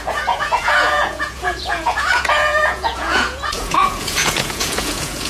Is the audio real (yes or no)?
no